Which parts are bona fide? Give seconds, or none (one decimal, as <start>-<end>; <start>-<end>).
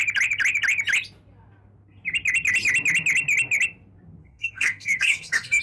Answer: 0.0-4.2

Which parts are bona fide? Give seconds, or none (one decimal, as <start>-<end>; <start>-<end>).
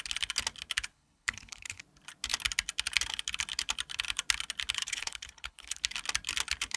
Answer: 0.0-0.9; 1.8-4.8; 5.8-6.8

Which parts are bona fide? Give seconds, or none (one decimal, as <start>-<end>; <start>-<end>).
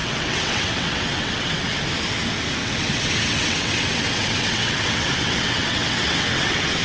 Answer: 1.7-2.6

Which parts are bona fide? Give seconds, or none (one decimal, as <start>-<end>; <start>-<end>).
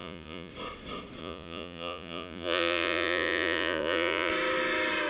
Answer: 0.5-1.2; 4.3-5.1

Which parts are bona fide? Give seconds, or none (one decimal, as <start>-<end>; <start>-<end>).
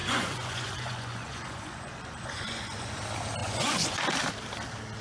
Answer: 3.0-3.4; 4.0-5.0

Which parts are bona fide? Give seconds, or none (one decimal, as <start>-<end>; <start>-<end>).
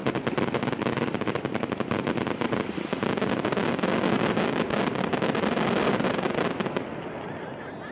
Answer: 0.0-7.9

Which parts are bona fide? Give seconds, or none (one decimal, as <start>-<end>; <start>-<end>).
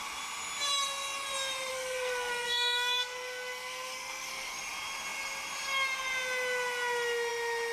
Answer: 0.0-1.7; 4.6-7.7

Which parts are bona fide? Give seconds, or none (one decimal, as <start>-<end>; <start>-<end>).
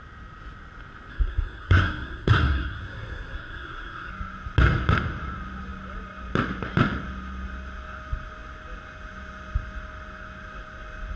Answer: 0.0-1.1; 4.1-11.2